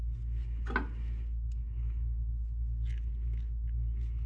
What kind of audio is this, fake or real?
real